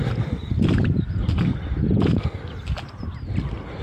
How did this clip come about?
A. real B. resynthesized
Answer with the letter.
B